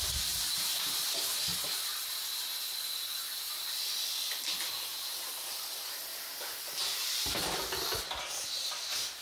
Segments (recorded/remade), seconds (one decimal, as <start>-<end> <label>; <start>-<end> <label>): 0.0-9.2 recorded